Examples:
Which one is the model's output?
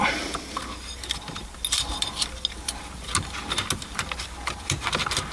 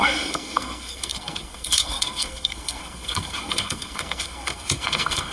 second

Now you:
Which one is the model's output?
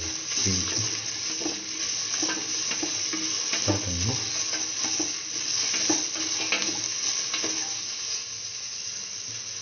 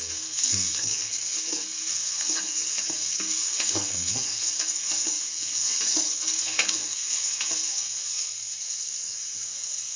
second